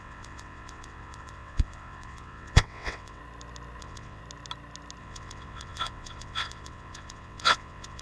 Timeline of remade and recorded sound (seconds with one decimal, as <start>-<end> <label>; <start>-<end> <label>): 0.0-3.2 remade; 3.2-3.8 recorded; 3.8-4.2 remade; 4.2-5.0 recorded; 5.0-8.0 remade

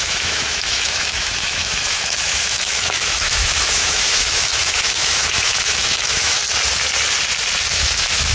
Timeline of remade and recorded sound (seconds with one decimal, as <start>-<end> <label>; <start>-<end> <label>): 0.0-6.4 remade; 6.4-7.7 recorded; 7.7-8.3 remade

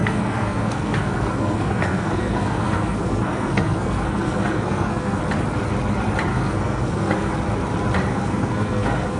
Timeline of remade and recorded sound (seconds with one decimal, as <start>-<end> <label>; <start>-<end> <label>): 0.0-5.2 remade; 5.2-6.3 recorded; 6.3-7.3 remade; 7.3-8.1 recorded; 8.1-9.2 remade